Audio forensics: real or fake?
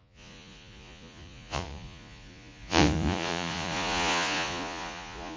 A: fake